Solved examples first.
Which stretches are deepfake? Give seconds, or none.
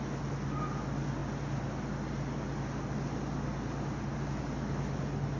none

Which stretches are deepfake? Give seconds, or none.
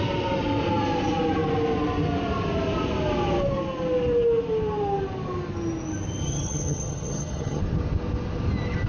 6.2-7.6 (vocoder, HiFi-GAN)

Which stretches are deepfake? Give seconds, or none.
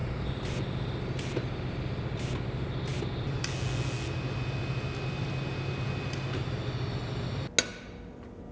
none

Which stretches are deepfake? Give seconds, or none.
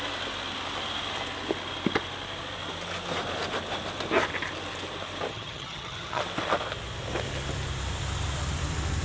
5.3-6.2 (vocoder, HiFi-GAN)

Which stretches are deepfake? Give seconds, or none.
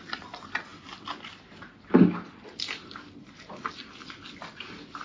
none